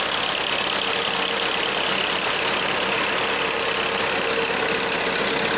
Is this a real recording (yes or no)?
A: yes